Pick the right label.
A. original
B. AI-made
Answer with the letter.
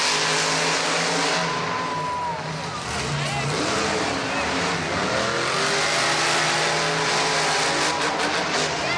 A